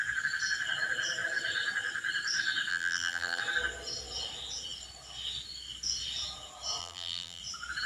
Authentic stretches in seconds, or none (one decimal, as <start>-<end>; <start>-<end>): 0.0-2.7; 3.4-6.8; 7.4-7.9